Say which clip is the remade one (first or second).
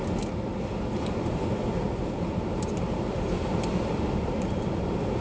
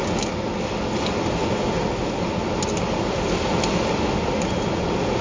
first